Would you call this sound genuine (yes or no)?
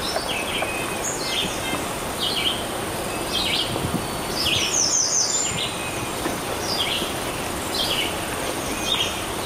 yes